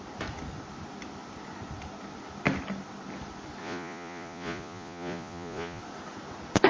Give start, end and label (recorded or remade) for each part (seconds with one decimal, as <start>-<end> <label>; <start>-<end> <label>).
0.0-3.6 recorded; 3.6-5.8 remade; 5.8-6.7 recorded